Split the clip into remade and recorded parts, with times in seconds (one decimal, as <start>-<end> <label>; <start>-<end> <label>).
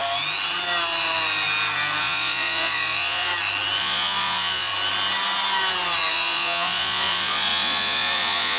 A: 0.0-2.0 recorded; 2.0-3.3 remade; 3.3-3.8 recorded; 3.8-4.7 remade; 4.7-6.1 recorded; 6.1-8.6 remade